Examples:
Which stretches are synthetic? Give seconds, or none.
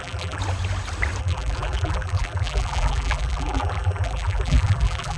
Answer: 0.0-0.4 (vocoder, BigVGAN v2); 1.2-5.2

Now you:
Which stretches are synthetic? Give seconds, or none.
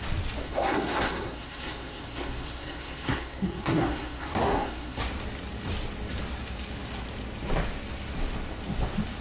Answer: 0.4-5.0 (codec, SNAC)